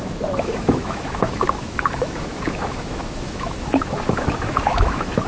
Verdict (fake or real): fake